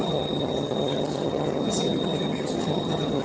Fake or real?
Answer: fake